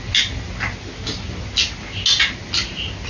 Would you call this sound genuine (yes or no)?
yes